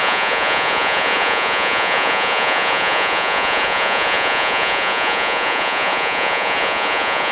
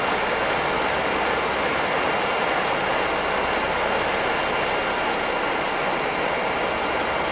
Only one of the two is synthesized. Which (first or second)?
first